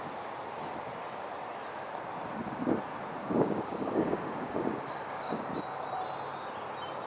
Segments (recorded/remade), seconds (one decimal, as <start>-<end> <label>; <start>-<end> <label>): 0.0-3.2 recorded; 3.2-5.4 remade; 5.4-7.1 recorded